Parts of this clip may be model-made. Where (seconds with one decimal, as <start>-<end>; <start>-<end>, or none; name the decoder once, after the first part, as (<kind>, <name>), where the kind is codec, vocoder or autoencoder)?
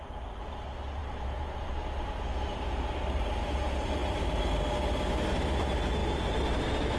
1.0-1.7 (vocoder, BigVGAN v2)